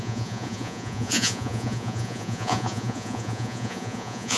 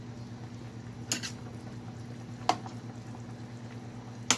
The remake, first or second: first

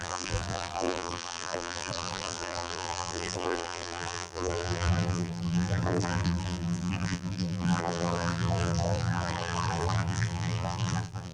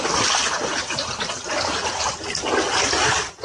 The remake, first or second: first